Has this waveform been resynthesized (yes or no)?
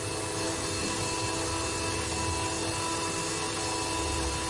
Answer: no